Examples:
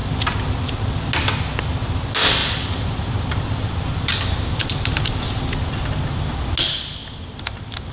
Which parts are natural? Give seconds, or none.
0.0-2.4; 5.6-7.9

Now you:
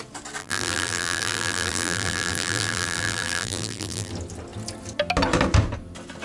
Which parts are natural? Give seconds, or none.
0.0-0.4; 4.1-6.2

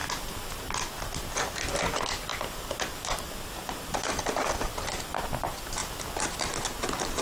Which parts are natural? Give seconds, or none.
0.0-2.3; 5.2-7.2

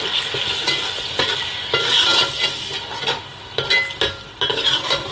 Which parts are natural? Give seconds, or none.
0.0-5.1

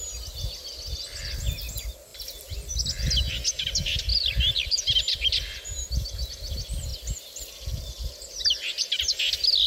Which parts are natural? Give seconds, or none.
0.0-2.1; 2.7-4.1; 6.3-6.9; 7.4-9.7

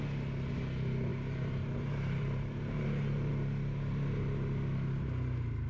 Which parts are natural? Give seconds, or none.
0.0-1.1; 3.3-5.7

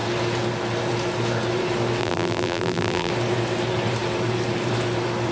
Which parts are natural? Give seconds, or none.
0.0-2.0; 3.1-5.3

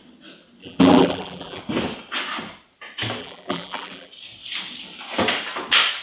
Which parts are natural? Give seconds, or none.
0.0-0.6; 1.6-3.2; 4.1-6.0